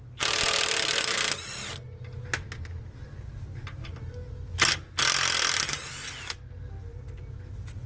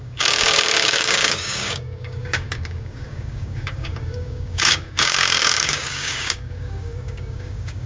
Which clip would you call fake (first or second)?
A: second